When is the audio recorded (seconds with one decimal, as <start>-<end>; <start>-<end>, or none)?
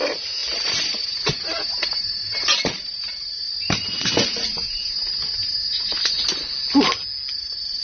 0.0-7.8